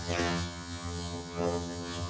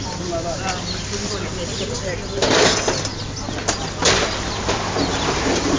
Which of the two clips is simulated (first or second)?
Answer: first